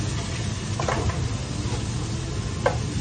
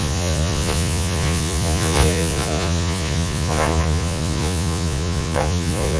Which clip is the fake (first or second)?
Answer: second